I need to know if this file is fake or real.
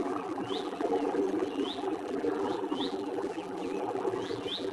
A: fake